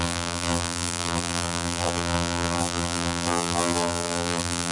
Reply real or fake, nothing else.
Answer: fake